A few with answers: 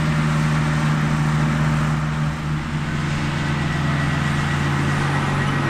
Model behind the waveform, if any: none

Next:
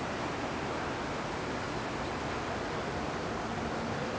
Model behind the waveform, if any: none